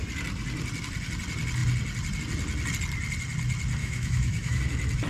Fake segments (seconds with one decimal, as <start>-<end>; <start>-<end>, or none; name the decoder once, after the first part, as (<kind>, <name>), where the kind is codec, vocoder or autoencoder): 3.8-4.6 (autoencoder, DAC-VAE)